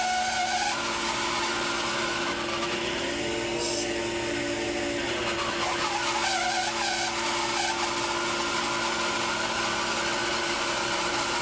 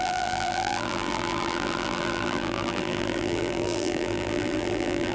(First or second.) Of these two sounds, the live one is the first